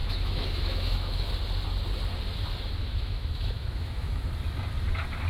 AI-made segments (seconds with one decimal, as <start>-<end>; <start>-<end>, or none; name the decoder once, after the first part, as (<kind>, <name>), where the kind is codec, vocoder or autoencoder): 0.0-1.3 (autoencoder, DAC-VAE); 2.8-4.3